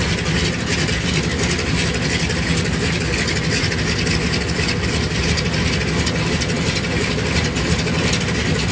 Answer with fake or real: real